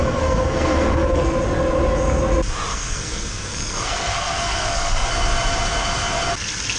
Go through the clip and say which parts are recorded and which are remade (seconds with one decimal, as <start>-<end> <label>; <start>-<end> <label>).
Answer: 0.0-1.2 remade; 1.2-2.7 recorded; 2.7-5.1 remade; 5.1-6.8 recorded